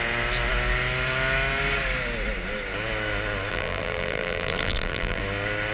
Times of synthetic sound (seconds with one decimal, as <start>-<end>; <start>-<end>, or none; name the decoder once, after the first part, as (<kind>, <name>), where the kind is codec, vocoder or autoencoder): 3.5-5.2 (vocoder, BigVGAN v2)

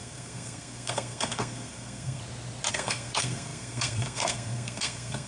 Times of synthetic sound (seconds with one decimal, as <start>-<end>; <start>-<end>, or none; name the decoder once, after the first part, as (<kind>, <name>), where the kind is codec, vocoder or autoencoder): 0.0-2.2 (codec, SNAC); 2.7-5.3

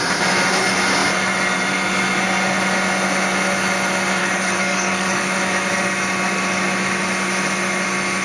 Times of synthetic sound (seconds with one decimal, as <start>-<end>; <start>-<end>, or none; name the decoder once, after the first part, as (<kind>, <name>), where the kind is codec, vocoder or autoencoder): 4.2-5.2 (codec, DAC)

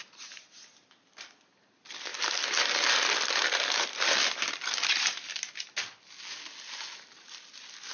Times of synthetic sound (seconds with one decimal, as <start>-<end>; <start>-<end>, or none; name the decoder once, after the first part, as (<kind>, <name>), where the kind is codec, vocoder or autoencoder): none